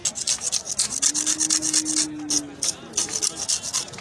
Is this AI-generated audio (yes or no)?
no